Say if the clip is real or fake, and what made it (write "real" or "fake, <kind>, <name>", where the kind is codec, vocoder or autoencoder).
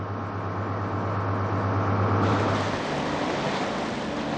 real